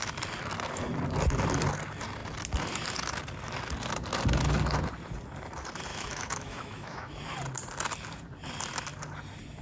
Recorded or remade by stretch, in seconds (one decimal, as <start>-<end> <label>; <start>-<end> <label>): 0.0-5.9 recorded; 5.9-7.3 remade; 7.3-9.6 recorded